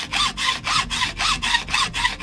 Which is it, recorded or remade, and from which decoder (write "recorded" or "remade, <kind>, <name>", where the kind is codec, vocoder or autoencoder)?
recorded